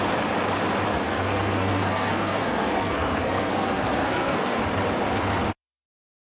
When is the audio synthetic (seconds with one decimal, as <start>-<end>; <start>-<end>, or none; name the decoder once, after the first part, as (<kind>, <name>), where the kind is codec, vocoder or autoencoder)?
0.9-4.6 (codec, SNAC)